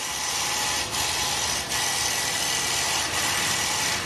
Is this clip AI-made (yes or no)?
no